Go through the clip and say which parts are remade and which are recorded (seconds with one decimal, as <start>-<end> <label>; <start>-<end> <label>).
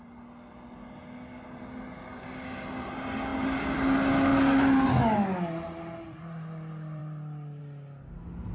0.0-3.3 recorded; 3.3-3.8 remade; 3.8-7.0 recorded; 7.0-7.6 remade; 7.6-8.5 recorded